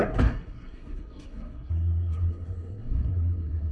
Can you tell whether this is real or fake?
fake